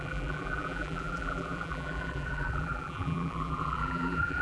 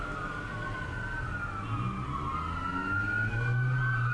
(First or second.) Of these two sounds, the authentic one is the second